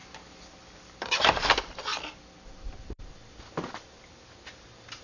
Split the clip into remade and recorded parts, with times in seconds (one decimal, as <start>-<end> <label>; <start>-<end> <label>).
0.0-1.2 recorded; 1.2-1.9 remade; 1.9-5.0 recorded